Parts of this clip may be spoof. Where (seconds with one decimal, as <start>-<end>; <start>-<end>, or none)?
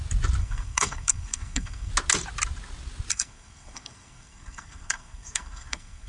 0.4-1.9; 3.1-6.1